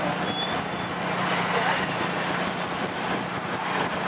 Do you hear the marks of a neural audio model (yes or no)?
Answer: no